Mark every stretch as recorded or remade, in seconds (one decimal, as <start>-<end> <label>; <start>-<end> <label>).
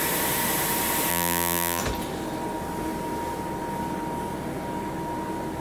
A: 0.0-1.1 recorded; 1.1-1.8 remade; 1.8-5.6 recorded